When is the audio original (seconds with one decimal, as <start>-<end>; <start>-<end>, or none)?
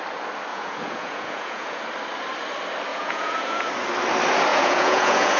0.0-0.5; 1.8-2.9; 3.7-4.5